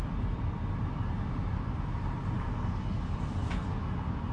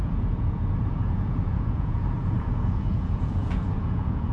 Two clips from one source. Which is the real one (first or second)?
first